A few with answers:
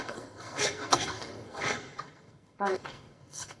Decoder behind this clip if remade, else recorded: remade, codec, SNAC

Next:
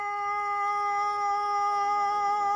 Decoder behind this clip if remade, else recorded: recorded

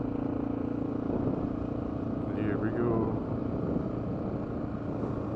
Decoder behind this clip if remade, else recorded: recorded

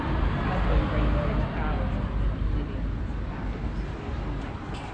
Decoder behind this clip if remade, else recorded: recorded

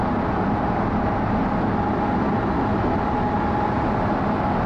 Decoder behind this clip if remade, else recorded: recorded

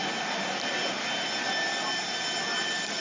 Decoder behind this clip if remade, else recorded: recorded